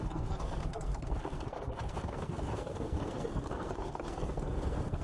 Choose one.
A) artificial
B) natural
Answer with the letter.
A